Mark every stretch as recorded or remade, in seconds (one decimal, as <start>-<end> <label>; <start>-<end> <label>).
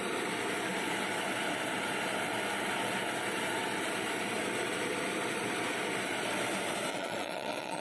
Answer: 0.0-6.9 recorded; 6.9-7.8 remade